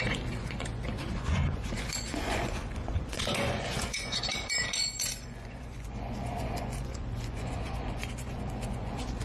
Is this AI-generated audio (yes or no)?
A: yes